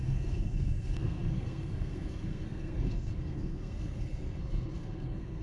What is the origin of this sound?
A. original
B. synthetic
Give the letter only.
B